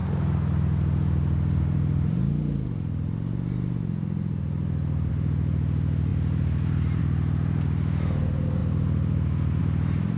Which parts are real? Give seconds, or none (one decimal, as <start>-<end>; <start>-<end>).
0.0-10.2